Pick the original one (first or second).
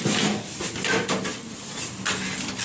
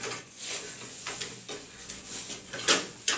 first